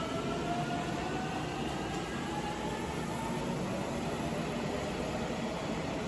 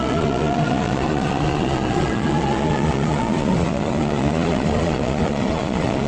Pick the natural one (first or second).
first